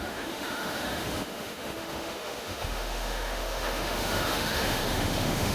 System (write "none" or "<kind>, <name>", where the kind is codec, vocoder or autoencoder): autoencoder, DAC-VAE